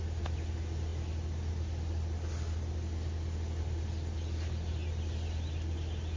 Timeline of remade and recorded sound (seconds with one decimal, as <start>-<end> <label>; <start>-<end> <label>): 0.0-6.2 recorded